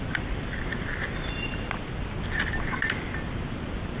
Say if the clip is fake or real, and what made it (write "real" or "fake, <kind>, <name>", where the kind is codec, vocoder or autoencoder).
real